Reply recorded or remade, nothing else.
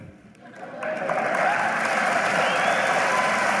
recorded